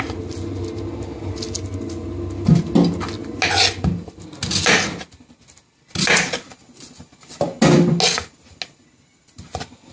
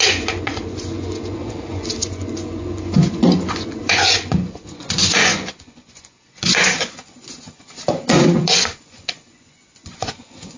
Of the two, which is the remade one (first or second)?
second